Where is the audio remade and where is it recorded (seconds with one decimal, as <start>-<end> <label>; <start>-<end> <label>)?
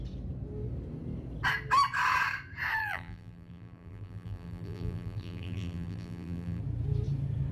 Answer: 0.0-2.8 recorded; 2.8-6.6 remade; 6.6-7.5 recorded